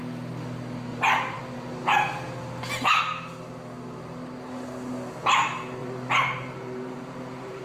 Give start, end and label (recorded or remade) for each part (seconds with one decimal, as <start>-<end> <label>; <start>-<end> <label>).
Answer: 0.0-0.9 recorded; 0.9-1.4 remade; 1.4-5.8 recorded; 5.8-7.6 remade